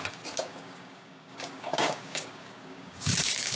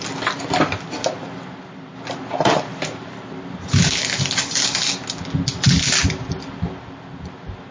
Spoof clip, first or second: first